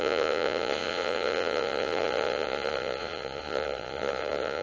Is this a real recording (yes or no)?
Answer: no